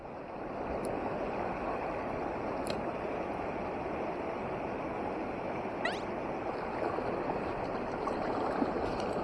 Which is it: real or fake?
real